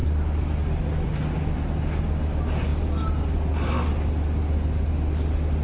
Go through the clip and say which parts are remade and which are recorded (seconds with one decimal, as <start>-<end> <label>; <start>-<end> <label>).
0.0-5.6 recorded